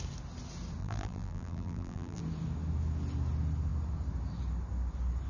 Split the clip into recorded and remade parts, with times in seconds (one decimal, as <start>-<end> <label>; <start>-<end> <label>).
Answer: 0.0-0.8 recorded; 0.8-2.2 remade; 2.2-5.3 recorded